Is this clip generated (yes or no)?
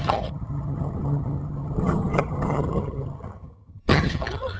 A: yes